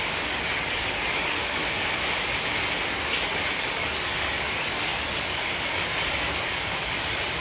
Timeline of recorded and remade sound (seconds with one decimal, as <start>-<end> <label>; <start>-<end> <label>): 0.0-1.6 remade; 1.6-2.9 recorded; 2.9-7.4 remade

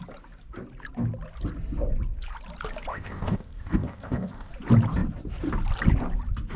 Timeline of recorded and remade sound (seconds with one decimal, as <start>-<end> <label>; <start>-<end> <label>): 0.0-2.9 recorded; 2.9-4.5 remade; 4.5-6.6 recorded

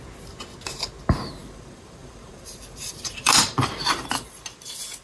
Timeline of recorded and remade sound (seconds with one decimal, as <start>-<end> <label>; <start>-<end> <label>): 0.0-1.4 recorded; 1.4-4.4 remade; 4.4-5.0 recorded

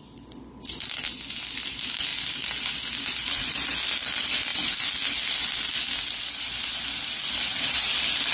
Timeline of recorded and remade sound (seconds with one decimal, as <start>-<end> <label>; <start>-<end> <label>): 0.0-8.3 recorded

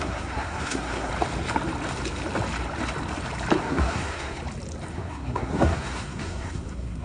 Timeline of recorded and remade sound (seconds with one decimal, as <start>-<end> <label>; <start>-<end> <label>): 0.0-1.1 remade; 1.1-3.6 recorded; 3.6-4.4 remade; 4.4-4.9 recorded; 4.9-7.0 remade

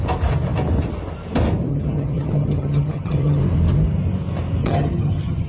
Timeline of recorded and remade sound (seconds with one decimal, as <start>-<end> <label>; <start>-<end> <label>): 0.0-1.7 recorded; 1.7-3.4 remade; 3.4-4.6 recorded; 4.6-5.5 remade

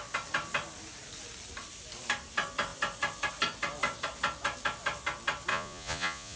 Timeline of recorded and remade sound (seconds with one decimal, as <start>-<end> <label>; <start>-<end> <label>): 0.0-5.5 recorded; 5.5-6.4 remade